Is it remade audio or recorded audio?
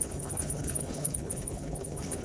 remade